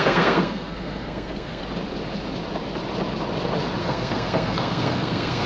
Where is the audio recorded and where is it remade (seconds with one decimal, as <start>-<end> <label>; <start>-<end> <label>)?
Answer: 0.0-1.6 remade; 1.6-3.8 recorded; 3.8-5.5 remade